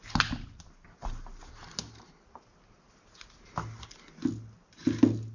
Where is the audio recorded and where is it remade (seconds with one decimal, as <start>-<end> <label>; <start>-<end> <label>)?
0.0-5.3 recorded